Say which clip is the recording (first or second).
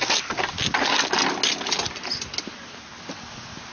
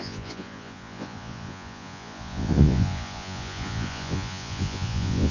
first